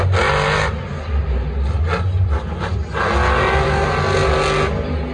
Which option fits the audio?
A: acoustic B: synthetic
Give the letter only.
A